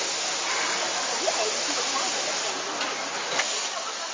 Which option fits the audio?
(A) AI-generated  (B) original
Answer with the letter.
B